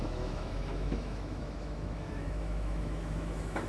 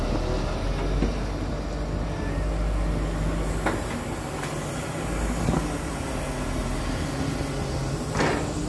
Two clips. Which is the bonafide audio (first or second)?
second